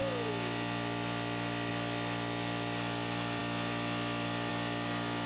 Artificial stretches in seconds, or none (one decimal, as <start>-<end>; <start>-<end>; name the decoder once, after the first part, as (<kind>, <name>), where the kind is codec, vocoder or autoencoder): none